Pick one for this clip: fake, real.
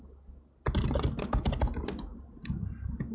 real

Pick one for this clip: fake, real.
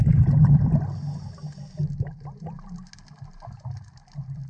real